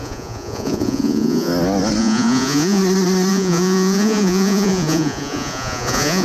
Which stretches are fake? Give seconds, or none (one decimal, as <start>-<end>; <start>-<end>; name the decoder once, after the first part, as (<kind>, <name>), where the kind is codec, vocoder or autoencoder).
0.0-1.5 (vocoder, Vocos); 2.0-2.8; 3.3-6.2